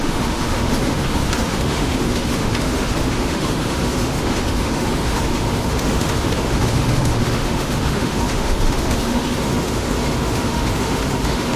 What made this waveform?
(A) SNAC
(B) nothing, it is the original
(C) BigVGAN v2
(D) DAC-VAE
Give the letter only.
D